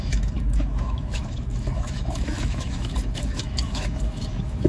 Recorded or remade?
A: remade